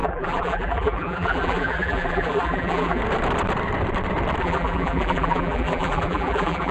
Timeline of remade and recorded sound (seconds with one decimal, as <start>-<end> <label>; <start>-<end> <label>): 0.0-3.0 remade; 3.0-4.4 recorded; 4.4-6.7 remade